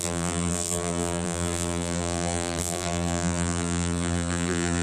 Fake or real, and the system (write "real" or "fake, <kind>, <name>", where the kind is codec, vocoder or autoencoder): fake, vocoder, BigVGAN v2